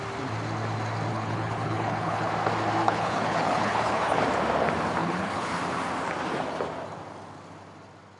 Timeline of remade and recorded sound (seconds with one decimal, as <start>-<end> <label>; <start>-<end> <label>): 0.0-1.1 recorded; 1.1-2.3 remade; 2.3-2.8 recorded; 2.8-4.2 remade; 4.2-5.0 recorded; 5.0-5.6 remade; 5.6-8.2 recorded